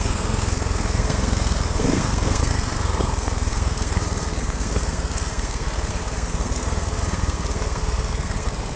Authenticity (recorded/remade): remade